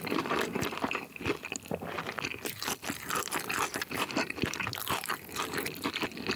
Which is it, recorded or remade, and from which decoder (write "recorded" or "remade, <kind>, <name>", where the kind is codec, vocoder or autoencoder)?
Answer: remade, vocoder, BigVGAN v2